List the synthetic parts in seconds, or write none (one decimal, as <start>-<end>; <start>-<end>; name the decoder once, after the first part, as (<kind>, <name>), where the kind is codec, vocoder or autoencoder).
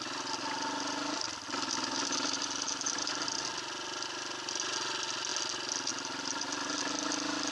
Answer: none